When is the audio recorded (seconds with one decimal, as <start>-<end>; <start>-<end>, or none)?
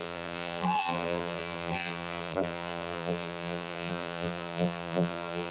none